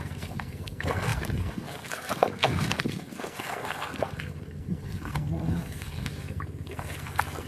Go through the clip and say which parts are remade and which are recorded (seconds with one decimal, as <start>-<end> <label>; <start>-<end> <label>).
0.0-7.5 remade